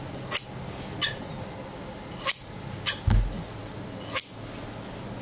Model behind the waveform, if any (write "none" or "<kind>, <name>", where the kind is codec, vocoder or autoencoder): none